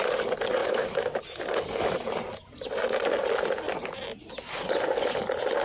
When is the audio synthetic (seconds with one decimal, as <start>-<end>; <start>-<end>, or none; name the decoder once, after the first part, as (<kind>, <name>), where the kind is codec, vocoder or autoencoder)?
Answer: 0.6-1.2 (autoencoder, DAC-VAE)